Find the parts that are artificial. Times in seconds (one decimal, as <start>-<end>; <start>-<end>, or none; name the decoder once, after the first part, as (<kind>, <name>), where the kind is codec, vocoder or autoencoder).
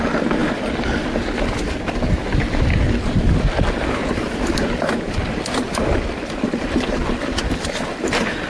none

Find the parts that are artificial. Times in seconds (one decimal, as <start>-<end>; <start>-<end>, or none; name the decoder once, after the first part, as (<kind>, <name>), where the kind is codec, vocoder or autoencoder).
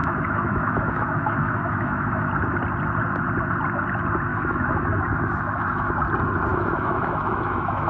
0.0-2.3 (autoencoder, DAC-VAE); 4.3-5.9; 6.5-7.9